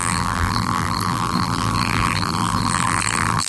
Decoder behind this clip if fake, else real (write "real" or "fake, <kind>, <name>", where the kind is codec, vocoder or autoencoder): fake, vocoder, BigVGAN v2